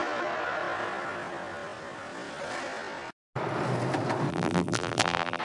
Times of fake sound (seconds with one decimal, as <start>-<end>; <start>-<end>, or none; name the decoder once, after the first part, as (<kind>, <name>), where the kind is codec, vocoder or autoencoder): 4.3-5.4 (vocoder, BigVGAN v2)